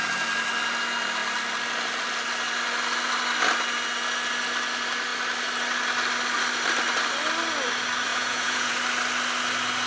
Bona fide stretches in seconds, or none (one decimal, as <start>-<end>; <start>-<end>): 0.0-8.1; 8.7-9.9